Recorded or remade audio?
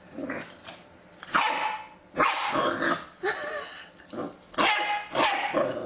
recorded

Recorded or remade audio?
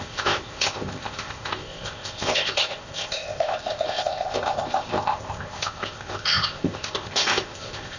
remade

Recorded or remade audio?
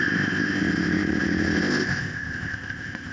remade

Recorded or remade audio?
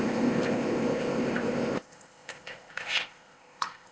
remade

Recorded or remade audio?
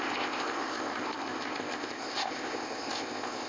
remade